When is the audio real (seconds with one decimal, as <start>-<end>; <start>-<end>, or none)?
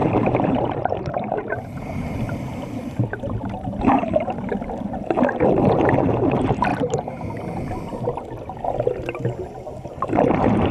4.5-6.7; 7.2-10.7